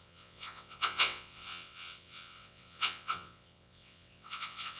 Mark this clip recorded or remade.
remade